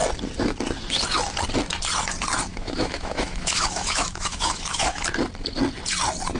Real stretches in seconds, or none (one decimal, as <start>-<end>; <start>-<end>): 0.0-2.5; 5.0-6.4